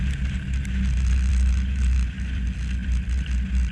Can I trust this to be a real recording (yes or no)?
yes